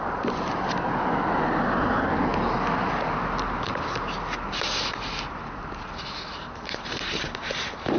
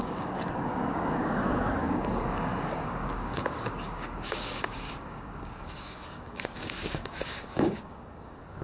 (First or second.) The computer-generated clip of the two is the second